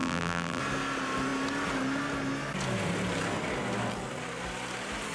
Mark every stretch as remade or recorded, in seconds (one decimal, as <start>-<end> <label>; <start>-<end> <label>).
0.0-0.6 remade; 0.6-5.1 recorded